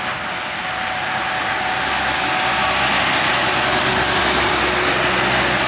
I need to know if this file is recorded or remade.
recorded